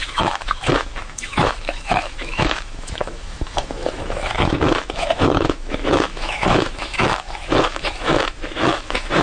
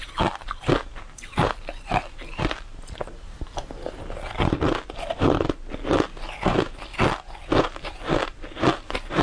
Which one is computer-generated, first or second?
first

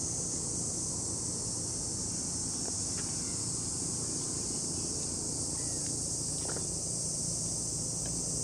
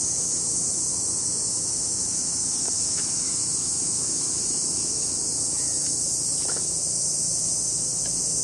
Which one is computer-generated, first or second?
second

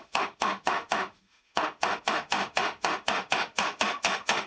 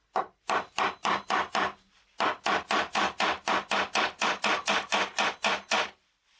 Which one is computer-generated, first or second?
first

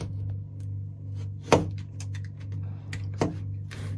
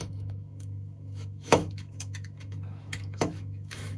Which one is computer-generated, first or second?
second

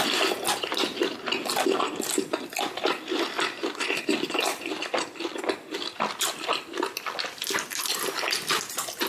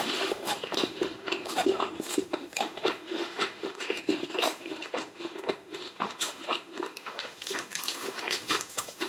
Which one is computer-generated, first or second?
second